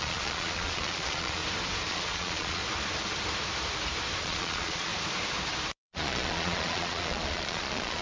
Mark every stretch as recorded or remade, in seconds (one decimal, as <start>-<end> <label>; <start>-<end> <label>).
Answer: 0.0-1.4 remade; 1.4-1.9 recorded; 1.9-2.6 remade; 2.6-4.2 recorded; 4.2-4.9 remade; 4.9-5.7 recorded; 5.7-8.0 remade

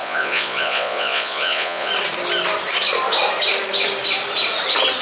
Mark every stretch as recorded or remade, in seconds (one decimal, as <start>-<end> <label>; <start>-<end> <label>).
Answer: 0.0-1.9 remade; 1.9-5.0 recorded

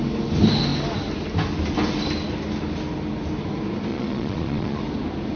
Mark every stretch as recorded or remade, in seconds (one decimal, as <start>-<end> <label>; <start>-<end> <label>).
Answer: 0.0-3.9 recorded; 3.9-4.8 remade; 4.8-5.4 recorded

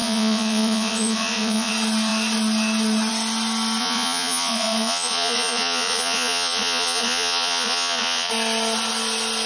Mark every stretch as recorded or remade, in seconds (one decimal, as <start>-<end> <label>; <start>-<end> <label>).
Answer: 0.0-1.7 remade; 1.7-3.8 recorded; 3.8-8.3 remade; 8.3-9.5 recorded

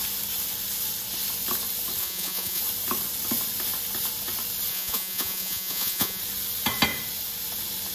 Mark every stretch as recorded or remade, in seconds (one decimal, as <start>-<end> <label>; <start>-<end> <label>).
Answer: 0.0-2.0 recorded; 2.0-2.6 remade; 2.6-4.7 recorded; 4.7-6.2 remade; 6.2-7.9 recorded